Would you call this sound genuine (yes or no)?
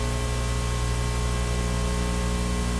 yes